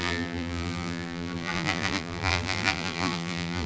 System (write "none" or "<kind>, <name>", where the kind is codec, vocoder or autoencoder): vocoder, BigVGAN v2